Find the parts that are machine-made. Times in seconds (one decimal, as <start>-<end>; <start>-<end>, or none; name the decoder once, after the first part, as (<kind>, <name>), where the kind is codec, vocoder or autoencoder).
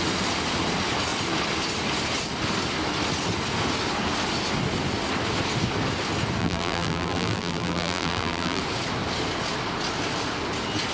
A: 6.4-8.6 (vocoder, BigVGAN v2)